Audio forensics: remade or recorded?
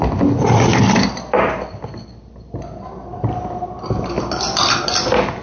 recorded